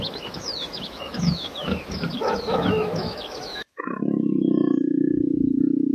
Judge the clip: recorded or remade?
remade